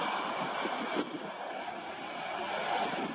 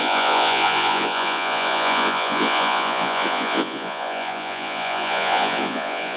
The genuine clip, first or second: first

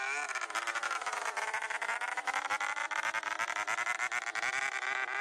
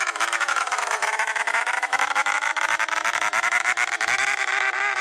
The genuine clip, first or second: first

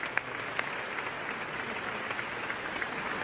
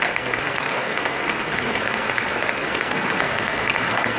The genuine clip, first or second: first